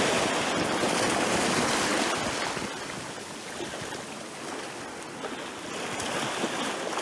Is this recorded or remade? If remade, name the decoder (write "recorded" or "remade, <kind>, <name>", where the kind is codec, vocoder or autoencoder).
recorded